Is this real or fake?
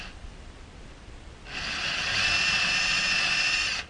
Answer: real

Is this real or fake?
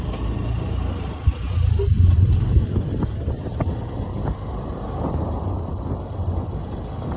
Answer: real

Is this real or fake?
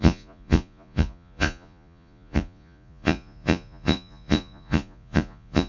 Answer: fake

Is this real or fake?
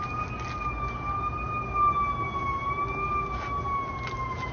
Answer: real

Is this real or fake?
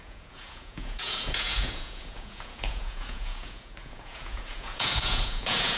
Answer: fake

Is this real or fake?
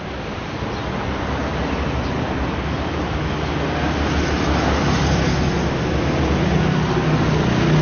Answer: real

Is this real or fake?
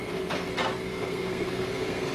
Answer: fake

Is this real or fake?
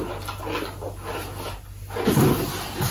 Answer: real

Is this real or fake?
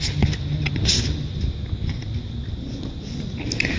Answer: real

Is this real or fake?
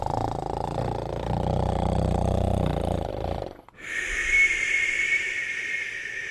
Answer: real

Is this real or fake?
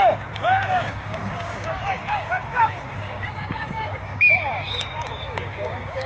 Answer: fake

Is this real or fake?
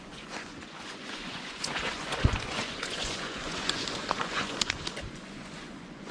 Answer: fake